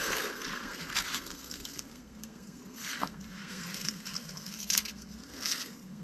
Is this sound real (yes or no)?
no